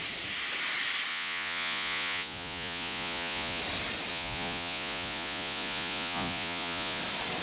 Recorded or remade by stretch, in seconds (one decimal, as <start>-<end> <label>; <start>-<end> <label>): 0.0-1.1 recorded; 1.1-3.6 remade; 3.6-4.1 recorded; 4.1-7.0 remade; 7.0-7.4 recorded